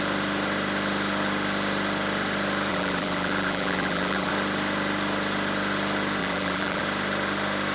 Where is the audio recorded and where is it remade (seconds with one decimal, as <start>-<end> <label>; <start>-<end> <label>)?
0.0-2.7 recorded; 2.7-4.3 remade; 4.3-6.2 recorded; 6.2-6.8 remade; 6.8-7.7 recorded